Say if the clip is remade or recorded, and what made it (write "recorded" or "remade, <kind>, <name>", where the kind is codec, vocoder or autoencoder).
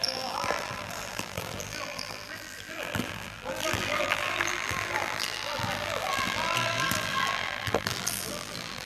remade, vocoder, BigVGAN v2